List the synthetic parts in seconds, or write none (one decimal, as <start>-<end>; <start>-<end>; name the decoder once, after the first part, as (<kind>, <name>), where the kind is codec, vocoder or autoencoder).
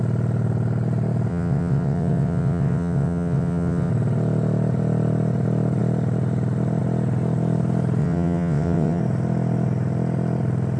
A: 1.3-3.9 (vocoder, WaveNeXt); 8.0-9.0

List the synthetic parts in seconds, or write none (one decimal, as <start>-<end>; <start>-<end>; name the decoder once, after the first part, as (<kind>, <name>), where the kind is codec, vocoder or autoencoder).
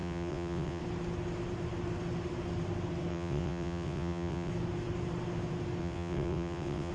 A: 0.0-0.8 (vocoder, WaveNeXt); 3.1-4.5; 5.8-6.9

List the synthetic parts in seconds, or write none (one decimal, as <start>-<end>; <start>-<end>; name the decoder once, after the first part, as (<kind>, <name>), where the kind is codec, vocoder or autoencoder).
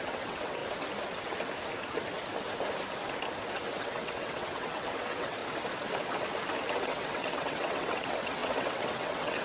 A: 0.0-0.6 (vocoder, WaveNeXt); 3.8-5.4; 6.8-9.4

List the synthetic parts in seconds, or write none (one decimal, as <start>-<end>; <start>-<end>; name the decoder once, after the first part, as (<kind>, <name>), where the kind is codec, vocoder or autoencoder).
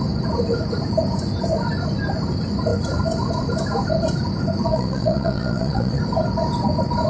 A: 4.7-6.0 (vocoder, WaveNeXt)